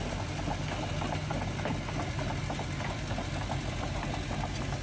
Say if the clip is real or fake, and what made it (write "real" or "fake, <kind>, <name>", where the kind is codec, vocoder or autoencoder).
real